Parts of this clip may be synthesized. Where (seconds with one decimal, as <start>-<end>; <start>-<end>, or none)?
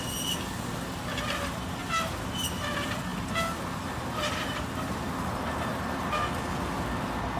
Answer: none